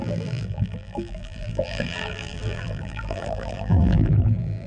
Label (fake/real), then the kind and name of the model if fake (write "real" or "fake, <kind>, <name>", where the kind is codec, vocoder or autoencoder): fake, vocoder, BigVGAN v2